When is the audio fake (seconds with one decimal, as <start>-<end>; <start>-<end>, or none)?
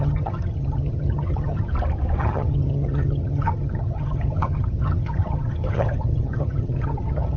0.0-1.7; 2.2-7.4